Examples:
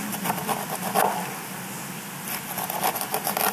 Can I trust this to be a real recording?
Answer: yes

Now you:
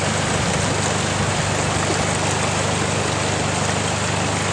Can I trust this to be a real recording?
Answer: yes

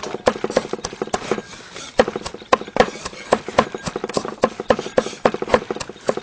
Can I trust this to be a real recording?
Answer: yes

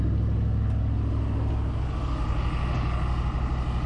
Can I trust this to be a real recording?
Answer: yes